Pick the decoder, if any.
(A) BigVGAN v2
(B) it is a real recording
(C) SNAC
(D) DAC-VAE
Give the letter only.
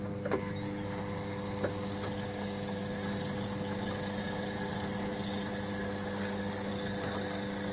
B